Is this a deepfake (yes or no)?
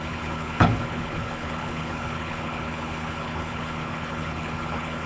yes